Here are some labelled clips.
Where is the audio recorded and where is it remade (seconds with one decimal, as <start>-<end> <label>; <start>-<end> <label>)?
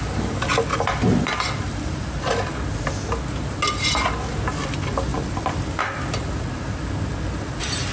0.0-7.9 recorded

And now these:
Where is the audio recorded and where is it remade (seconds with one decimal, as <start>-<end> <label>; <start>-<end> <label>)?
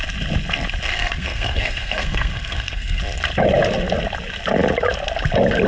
0.0-0.9 recorded; 0.9-3.0 remade; 3.0-5.7 recorded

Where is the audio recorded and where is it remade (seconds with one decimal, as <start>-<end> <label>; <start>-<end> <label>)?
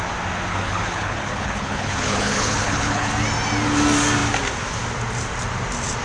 0.0-0.5 recorded; 0.5-3.1 remade; 3.1-6.0 recorded